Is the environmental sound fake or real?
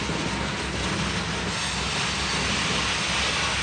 real